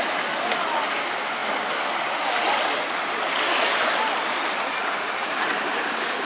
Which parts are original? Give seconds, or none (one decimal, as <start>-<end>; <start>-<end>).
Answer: 0.0-6.2